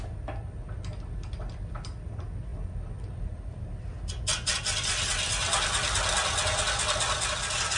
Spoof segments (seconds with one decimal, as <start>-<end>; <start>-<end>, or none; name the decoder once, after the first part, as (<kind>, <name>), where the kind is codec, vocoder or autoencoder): none